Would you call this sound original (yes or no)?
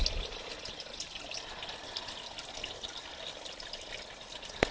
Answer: yes